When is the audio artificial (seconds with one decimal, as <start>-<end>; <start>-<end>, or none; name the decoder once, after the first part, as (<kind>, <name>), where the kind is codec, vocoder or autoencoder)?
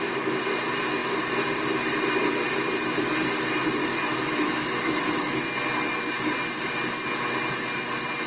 3.8-5.4 (autoencoder, DAC-VAE)